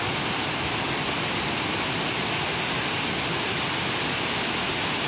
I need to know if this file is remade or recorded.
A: recorded